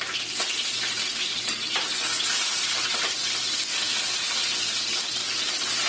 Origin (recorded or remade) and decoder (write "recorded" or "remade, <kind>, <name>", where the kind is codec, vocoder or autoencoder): recorded